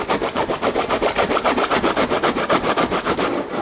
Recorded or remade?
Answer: recorded